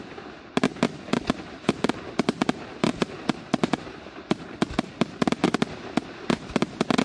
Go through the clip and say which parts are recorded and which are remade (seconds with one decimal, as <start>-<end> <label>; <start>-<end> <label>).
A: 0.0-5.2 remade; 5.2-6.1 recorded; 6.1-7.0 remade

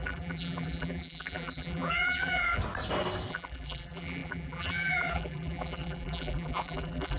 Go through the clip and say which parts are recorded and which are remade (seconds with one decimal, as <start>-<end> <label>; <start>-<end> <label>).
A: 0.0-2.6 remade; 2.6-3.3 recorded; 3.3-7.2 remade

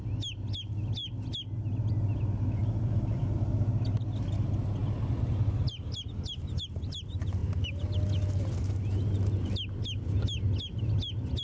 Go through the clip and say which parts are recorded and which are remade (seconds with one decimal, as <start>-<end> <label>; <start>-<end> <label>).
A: 0.0-2.6 recorded; 2.6-3.5 remade; 3.5-4.8 recorded; 4.8-5.4 remade; 5.4-11.4 recorded

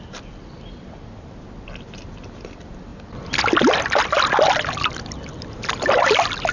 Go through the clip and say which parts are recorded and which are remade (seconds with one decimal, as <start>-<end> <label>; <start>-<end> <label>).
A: 0.0-6.5 recorded

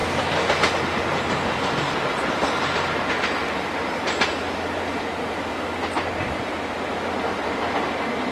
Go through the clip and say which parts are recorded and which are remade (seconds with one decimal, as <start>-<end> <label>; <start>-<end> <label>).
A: 0.0-8.3 recorded

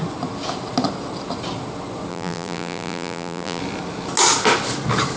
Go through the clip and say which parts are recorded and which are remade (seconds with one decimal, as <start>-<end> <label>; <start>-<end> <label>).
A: 0.0-2.1 recorded; 2.1-3.6 remade; 3.6-5.2 recorded